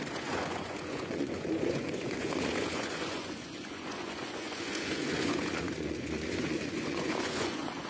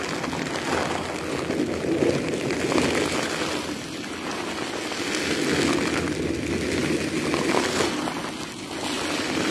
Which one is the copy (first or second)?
first